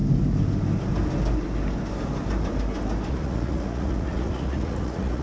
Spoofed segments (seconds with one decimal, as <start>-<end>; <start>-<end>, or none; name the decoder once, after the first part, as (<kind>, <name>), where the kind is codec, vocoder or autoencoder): 3.1-5.2 (vocoder, Vocos)

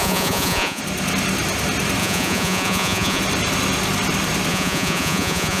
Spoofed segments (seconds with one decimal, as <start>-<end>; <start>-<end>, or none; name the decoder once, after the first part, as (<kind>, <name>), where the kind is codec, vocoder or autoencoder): 0.0-0.8 (vocoder, Vocos); 2.0-3.2; 4.5-5.6